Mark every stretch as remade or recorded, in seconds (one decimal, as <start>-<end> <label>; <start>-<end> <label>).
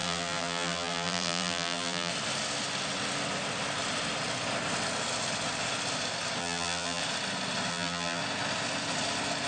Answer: 0.0-2.1 remade; 2.1-6.4 recorded; 6.4-7.0 remade; 7.0-7.7 recorded; 7.7-8.2 remade; 8.2-9.5 recorded